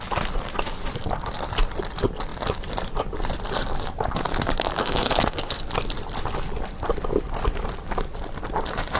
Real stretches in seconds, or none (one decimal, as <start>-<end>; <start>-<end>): 0.0-4.8; 5.6-9.0